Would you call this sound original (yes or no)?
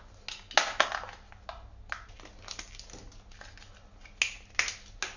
yes